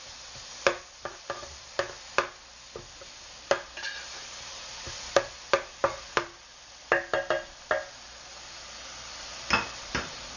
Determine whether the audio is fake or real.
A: real